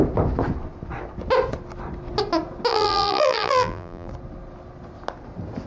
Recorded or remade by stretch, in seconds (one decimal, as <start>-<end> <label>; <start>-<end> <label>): 0.0-2.7 recorded; 2.7-4.1 remade; 4.1-5.7 recorded